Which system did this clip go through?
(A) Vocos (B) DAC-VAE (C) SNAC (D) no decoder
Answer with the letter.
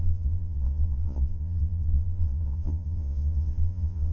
A